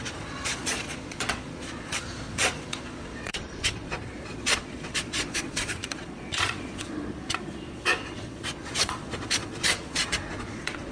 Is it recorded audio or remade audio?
remade